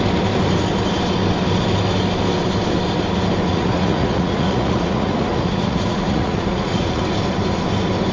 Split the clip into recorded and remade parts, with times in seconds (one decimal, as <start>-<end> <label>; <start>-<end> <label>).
0.0-3.5 recorded; 3.5-7.0 remade; 7.0-8.1 recorded